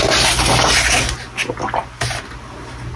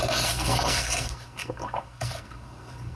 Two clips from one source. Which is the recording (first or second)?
first